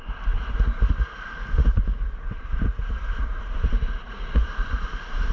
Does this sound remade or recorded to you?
remade